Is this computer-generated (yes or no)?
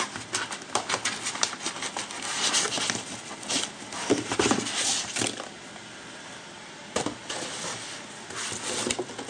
no